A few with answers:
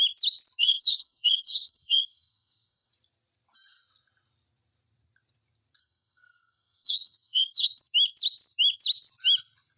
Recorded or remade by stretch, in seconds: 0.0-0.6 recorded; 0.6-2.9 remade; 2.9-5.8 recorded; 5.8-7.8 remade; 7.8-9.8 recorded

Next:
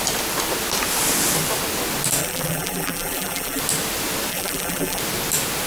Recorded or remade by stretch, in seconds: 0.0-2.2 recorded; 2.2-3.6 remade; 3.6-4.3 recorded; 4.3-5.0 remade; 5.0-5.7 recorded

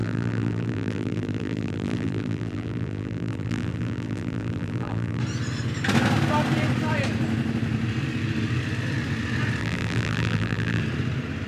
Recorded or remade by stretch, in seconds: 0.0-5.2 remade; 5.2-9.6 recorded; 9.6-10.8 remade; 10.8-11.5 recorded

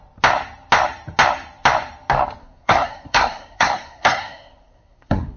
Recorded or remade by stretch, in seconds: 0.0-2.4 recorded; 2.4-5.4 remade

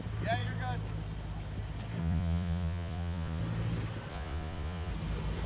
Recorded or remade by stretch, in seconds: 0.0-2.0 recorded; 2.0-3.4 remade; 3.4-4.1 recorded; 4.1-4.9 remade; 4.9-5.5 recorded

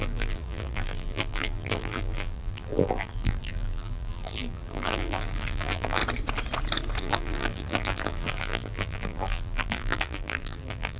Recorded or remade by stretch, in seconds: 0.0-6.0 remade; 6.0-7.0 recorded; 7.0-11.0 remade